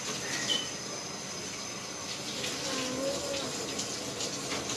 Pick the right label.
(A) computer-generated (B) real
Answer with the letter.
B